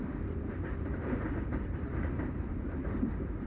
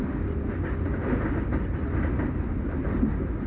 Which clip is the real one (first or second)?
second